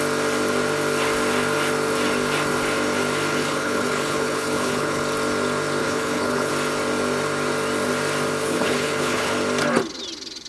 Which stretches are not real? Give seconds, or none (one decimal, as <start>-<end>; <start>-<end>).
3.3-5.0; 5.8-6.5; 8.4-9.3